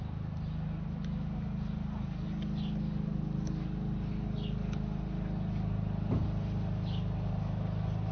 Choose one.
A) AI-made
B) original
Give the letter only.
B